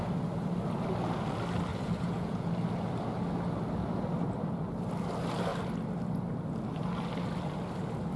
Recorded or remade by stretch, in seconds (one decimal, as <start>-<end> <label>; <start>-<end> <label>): 0.0-1.7 recorded; 1.7-2.5 remade; 2.5-8.2 recorded